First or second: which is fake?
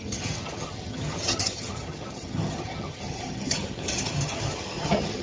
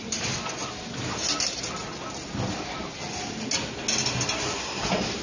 first